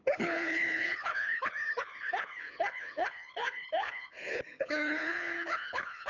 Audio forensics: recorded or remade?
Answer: remade